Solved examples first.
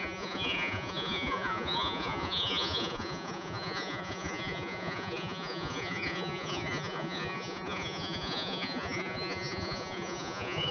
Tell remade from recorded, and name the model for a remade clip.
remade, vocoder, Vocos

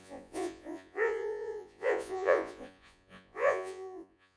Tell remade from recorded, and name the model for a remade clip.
remade, vocoder, Vocos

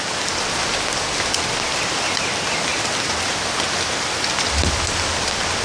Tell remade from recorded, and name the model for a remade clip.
recorded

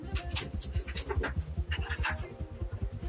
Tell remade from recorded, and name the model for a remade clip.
recorded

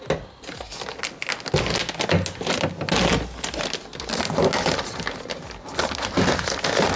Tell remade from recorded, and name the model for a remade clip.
recorded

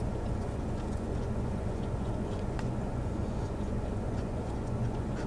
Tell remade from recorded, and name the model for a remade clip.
remade, vocoder, Vocos